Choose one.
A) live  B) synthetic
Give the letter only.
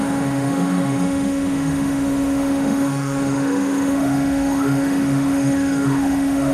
B